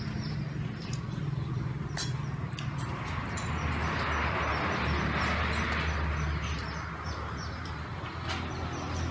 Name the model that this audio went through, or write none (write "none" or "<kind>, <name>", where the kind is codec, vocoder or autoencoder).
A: none